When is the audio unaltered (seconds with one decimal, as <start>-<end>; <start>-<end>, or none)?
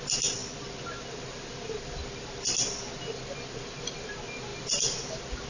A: 0.0-5.5